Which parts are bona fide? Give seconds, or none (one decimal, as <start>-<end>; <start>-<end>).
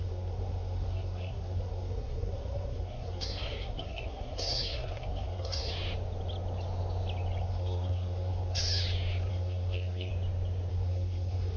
5.7-7.4; 8.6-9.3; 10.1-10.7